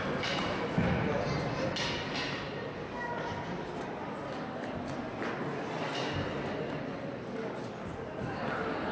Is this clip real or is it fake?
real